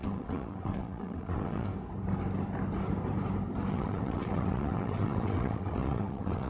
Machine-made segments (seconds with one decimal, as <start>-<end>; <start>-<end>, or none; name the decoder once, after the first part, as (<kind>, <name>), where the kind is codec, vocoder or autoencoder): 0.0-1.7 (vocoder, WaveNeXt); 3.7-6.5